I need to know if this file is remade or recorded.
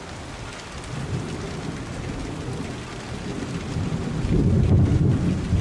recorded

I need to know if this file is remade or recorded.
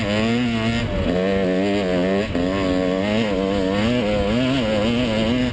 recorded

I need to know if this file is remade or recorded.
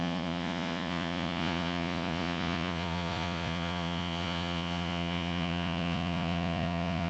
remade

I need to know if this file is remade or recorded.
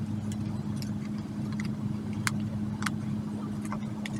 recorded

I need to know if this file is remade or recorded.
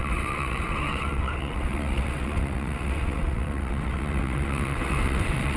remade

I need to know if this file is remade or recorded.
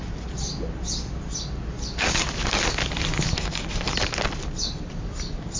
recorded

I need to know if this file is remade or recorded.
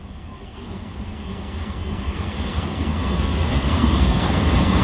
remade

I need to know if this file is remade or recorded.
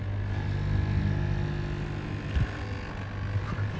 recorded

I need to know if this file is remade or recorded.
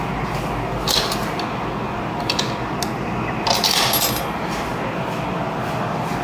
recorded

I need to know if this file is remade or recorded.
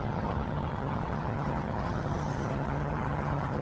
remade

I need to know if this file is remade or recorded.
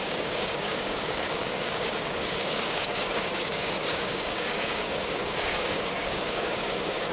remade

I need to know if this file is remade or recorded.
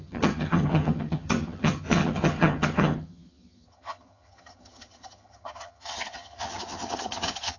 remade